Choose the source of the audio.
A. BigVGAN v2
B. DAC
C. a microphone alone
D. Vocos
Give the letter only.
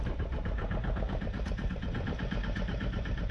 A